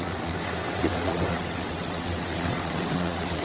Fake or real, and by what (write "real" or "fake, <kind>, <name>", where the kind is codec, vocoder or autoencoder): fake, vocoder, WaveNeXt